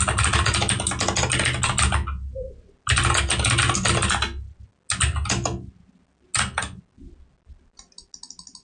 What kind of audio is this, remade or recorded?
recorded